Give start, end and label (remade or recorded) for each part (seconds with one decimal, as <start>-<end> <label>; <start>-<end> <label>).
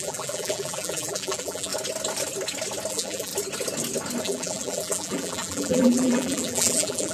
0.0-1.7 remade; 1.7-2.9 recorded; 2.9-3.3 remade; 3.3-4.2 recorded; 4.2-7.1 remade